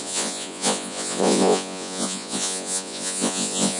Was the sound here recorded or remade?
remade